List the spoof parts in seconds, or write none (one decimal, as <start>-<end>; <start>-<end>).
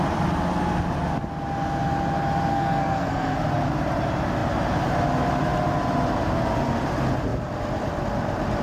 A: 2.5-3.4